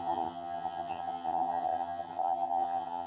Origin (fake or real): fake